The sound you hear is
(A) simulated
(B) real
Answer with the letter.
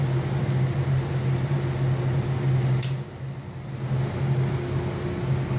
B